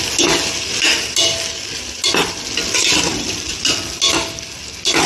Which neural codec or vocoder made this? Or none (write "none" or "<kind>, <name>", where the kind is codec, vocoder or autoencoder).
none